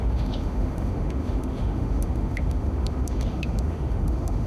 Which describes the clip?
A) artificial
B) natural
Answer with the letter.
A